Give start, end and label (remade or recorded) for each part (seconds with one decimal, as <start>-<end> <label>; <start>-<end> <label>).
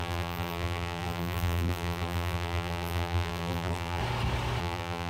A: 0.0-4.0 remade; 4.0-4.6 recorded; 4.6-5.1 remade